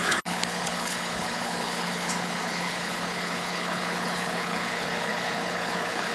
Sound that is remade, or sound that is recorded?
remade